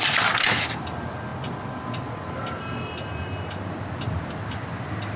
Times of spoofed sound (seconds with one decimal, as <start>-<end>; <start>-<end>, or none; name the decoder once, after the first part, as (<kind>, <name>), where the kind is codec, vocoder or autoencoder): none